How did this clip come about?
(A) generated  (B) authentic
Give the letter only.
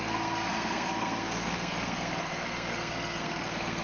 A